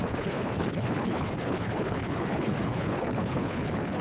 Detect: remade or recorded remade